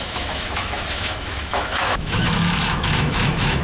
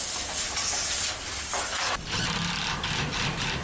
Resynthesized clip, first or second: first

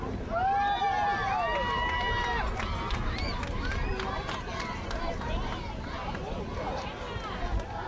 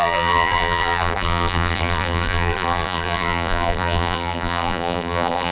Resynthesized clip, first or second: second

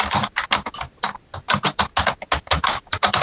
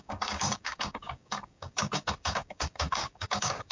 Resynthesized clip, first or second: second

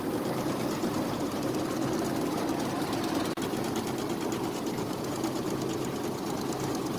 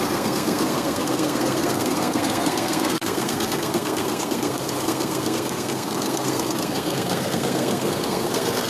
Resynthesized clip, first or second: second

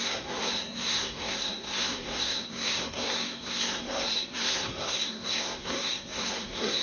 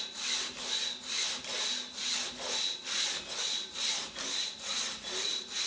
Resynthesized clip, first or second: first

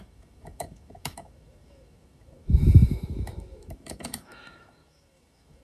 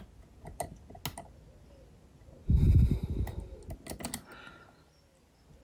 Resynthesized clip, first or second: first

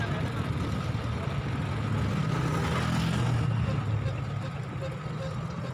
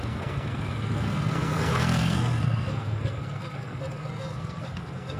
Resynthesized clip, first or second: second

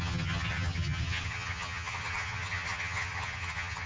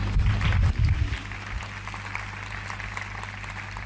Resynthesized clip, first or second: first